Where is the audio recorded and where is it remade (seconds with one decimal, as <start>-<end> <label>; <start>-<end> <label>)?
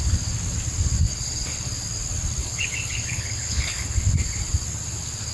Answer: 0.0-1.1 recorded; 1.1-1.7 remade; 1.7-2.4 recorded; 2.4-4.0 remade; 4.0-5.3 recorded